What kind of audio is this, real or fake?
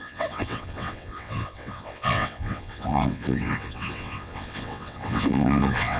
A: fake